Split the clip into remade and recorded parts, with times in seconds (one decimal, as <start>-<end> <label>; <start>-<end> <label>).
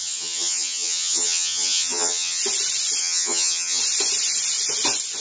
0.0-2.4 remade; 2.4-3.0 recorded; 3.0-3.8 remade; 3.8-5.2 recorded